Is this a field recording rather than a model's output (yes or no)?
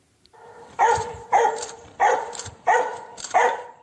no